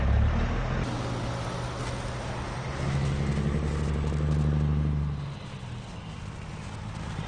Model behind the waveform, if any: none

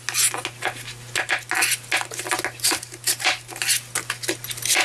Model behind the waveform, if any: none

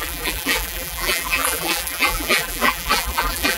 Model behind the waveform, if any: vocoder, BigVGAN v2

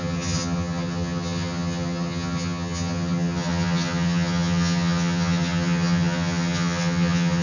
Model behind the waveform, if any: vocoder, HiFi-GAN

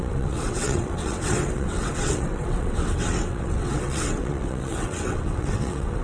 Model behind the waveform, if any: vocoder, WaveNeXt